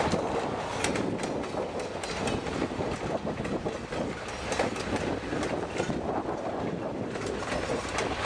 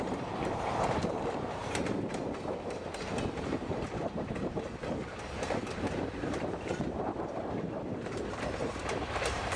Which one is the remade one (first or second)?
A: second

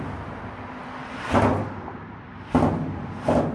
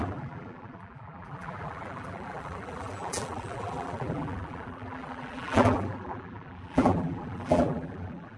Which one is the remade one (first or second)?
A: second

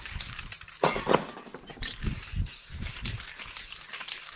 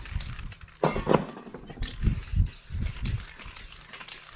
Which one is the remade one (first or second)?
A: first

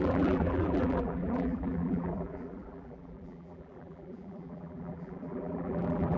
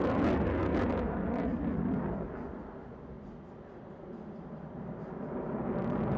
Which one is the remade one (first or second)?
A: first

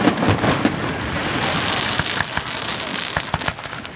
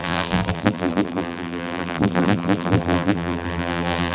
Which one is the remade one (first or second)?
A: second